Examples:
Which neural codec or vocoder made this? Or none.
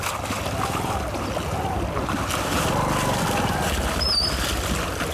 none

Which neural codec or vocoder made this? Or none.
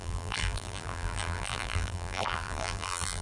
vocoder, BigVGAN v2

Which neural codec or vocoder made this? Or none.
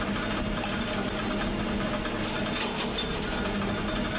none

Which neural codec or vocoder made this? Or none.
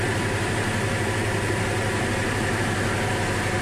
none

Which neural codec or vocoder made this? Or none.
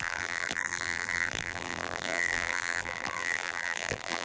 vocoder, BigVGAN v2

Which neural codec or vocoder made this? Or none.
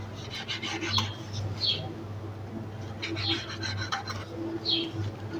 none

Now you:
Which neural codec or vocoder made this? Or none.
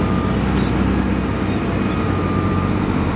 none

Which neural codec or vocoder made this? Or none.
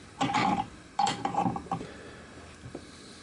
vocoder, BigVGAN v2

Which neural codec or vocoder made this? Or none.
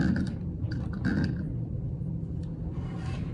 vocoder, BigVGAN v2